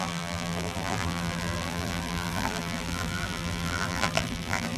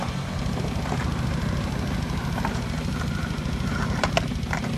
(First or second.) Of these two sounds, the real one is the second